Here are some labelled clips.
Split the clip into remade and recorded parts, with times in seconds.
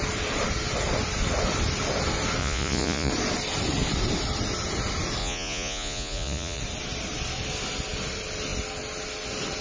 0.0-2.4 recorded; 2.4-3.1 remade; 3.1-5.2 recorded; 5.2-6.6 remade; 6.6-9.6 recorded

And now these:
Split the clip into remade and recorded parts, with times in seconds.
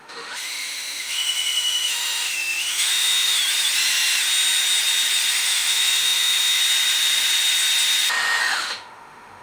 0.0-3.4 remade; 3.4-5.3 recorded; 5.3-6.6 remade; 6.6-8.4 recorded; 8.4-9.4 remade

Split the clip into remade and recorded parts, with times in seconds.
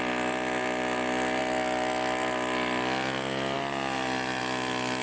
0.0-5.0 recorded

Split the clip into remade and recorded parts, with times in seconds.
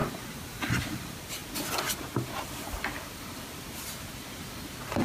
0.0-0.7 remade; 0.7-5.0 recorded